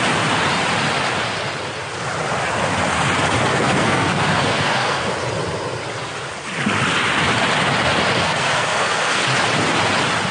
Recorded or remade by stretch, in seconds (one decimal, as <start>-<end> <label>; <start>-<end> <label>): 0.0-3.5 recorded; 3.5-5.1 remade; 5.1-8.2 recorded; 8.2-9.2 remade; 9.2-10.3 recorded